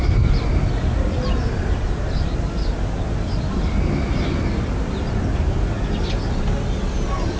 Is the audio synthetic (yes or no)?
no